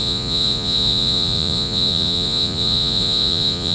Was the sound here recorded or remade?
remade